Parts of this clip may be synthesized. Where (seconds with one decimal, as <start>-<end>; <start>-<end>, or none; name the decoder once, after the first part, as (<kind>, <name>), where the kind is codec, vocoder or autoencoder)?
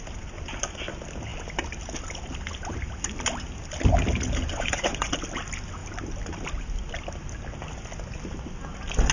4.5-5.1 (vocoder, Vocos)